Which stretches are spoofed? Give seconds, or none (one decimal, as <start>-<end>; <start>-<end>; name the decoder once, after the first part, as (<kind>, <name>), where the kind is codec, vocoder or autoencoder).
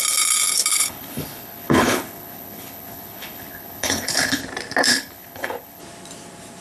0.7-4.4 (codec, HILCodec); 4.9-5.8